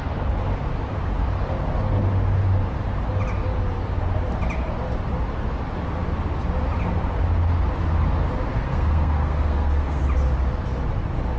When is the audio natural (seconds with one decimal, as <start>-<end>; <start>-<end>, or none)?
0.0-8.5; 10.0-11.4